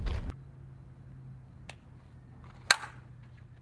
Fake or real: real